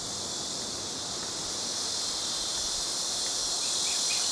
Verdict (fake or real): real